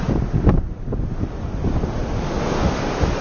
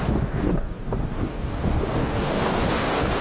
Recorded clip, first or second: first